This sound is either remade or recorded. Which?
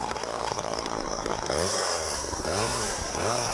remade